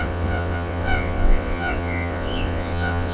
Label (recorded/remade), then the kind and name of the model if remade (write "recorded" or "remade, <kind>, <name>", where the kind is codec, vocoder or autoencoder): remade, vocoder, WaveNeXt